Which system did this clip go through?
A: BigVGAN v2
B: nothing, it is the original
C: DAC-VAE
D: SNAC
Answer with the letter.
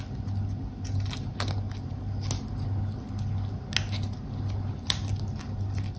B